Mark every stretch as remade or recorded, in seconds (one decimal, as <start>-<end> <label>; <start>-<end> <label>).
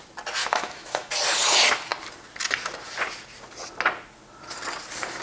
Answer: 0.0-0.4 recorded; 0.4-1.1 remade; 1.1-5.2 recorded